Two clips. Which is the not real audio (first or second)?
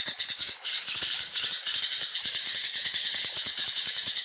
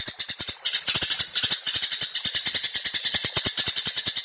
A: first